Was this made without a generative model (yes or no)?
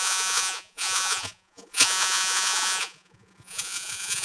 no